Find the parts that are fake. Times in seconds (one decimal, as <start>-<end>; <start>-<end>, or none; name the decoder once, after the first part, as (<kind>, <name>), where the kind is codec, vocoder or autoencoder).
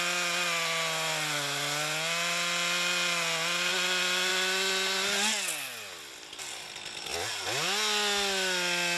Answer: none